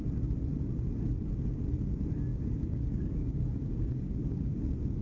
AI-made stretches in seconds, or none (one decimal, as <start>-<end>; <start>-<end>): 2.3-4.6